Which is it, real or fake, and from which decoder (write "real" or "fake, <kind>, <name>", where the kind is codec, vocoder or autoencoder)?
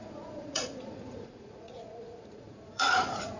fake, vocoder, Vocos